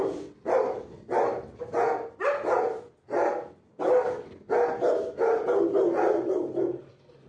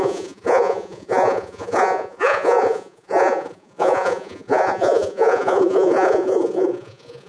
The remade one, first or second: second